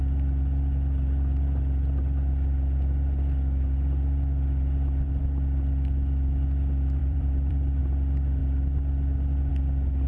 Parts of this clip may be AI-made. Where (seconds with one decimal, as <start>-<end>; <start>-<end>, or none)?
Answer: 7.0-7.8